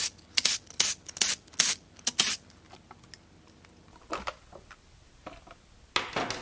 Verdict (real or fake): real